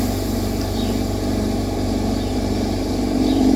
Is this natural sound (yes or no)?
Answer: no